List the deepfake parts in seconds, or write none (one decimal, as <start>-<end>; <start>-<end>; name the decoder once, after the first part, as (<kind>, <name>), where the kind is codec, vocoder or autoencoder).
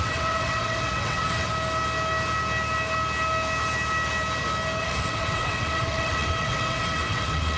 0.0-1.5 (vocoder, WaveNeXt); 4.8-7.6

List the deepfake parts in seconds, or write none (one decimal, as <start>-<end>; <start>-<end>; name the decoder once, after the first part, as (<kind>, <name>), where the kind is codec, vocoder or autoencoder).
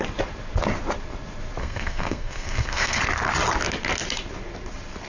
1.6-3.0 (codec, SNAC)